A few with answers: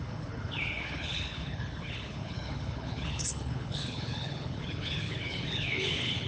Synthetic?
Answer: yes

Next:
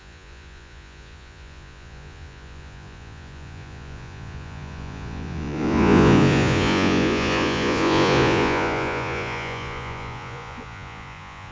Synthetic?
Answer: yes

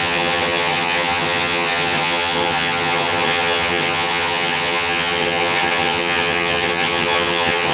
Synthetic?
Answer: yes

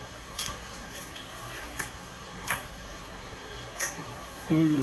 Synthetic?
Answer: yes